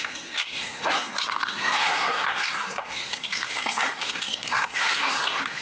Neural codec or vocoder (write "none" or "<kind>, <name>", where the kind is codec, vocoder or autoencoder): codec, SNAC